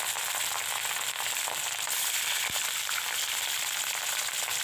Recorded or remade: recorded